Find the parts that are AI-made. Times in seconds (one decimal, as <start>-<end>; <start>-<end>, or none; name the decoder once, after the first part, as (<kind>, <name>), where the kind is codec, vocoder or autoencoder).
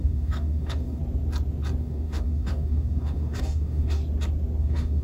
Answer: 0.0-1.0 (codec, DAC); 1.8-4.0; 4.6-5.0